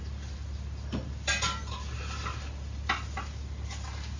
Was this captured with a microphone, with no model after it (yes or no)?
yes